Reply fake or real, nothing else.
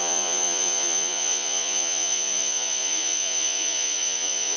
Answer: fake